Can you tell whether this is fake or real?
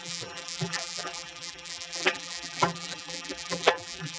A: fake